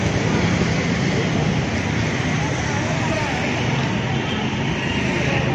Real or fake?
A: real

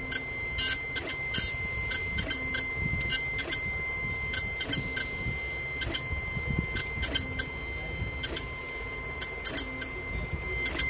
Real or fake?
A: real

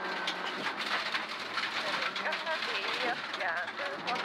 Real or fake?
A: real